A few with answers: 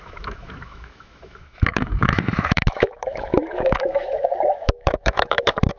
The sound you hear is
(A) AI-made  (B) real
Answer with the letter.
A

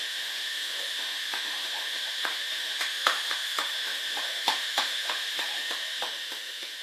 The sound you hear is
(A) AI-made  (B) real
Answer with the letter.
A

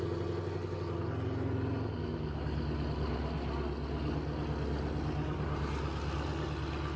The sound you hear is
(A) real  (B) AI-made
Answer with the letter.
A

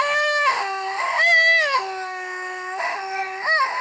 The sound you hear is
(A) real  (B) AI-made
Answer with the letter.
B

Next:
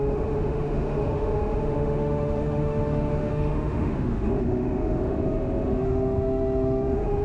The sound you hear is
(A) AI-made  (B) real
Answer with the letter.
A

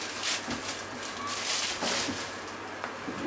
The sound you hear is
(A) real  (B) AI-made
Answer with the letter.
A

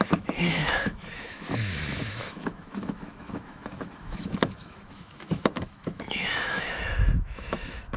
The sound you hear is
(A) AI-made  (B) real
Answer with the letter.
A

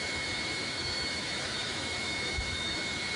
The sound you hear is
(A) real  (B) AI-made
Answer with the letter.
B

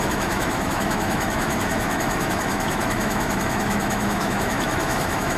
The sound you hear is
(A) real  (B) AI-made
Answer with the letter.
B